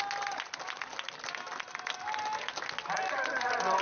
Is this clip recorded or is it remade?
recorded